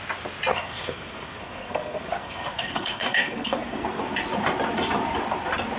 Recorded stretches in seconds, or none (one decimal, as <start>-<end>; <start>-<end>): 0.0-0.5; 4.0-5.8